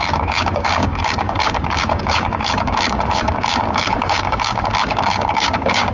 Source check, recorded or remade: remade